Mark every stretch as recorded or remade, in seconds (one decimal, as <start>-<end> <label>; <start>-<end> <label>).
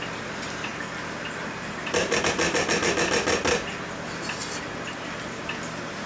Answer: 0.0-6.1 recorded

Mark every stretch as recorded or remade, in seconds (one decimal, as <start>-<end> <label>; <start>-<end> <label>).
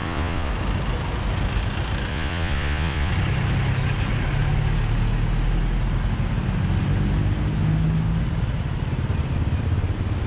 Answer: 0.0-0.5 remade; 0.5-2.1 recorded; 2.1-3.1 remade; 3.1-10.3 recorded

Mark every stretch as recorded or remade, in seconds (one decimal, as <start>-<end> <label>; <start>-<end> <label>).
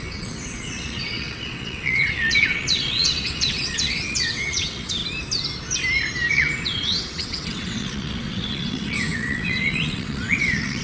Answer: 0.0-5.0 remade; 5.0-6.3 recorded; 6.3-10.8 remade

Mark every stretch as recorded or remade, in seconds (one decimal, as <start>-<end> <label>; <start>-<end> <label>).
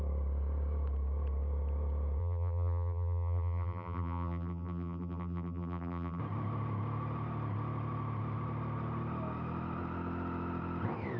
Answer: 0.0-2.2 recorded; 2.2-6.2 remade; 6.2-11.2 recorded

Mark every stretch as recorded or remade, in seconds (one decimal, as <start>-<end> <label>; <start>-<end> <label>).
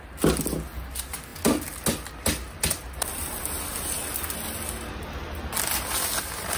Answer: 0.0-6.6 recorded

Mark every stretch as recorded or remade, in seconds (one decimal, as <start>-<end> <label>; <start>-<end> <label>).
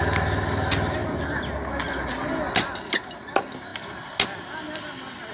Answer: 0.0-5.3 recorded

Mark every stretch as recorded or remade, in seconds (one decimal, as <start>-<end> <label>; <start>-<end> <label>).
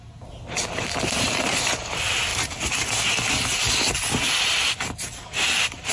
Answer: 0.0-5.9 recorded